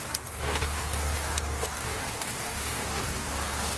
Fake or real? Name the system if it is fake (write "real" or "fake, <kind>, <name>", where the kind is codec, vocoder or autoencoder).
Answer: fake, codec, DAC